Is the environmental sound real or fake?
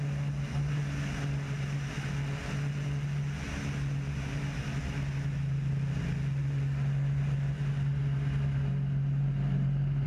real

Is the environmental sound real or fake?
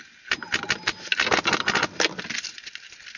real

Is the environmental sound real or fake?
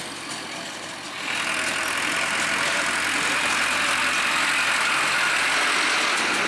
real